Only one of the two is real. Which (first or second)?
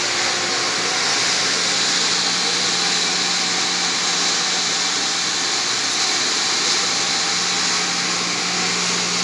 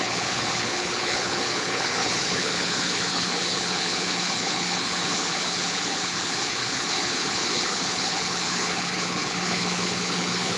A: first